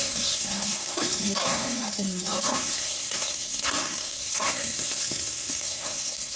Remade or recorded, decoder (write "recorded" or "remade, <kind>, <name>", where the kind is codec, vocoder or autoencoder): remade, codec, SNAC